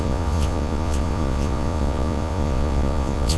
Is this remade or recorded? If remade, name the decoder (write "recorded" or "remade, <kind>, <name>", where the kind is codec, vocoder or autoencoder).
remade, vocoder, Vocos